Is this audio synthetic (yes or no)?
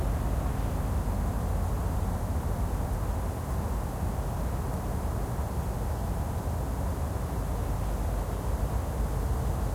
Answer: no